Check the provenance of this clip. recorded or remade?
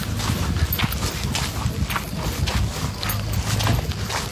recorded